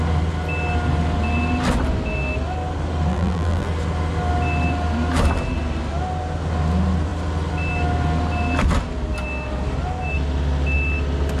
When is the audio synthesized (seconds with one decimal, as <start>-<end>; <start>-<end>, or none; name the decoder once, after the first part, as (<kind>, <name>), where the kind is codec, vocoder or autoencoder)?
3.1-3.7 (vocoder, BigVGAN v2)